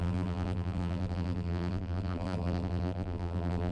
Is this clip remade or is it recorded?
remade